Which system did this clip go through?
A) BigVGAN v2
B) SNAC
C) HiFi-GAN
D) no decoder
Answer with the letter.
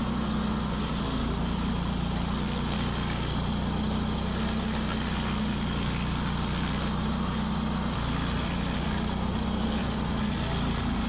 D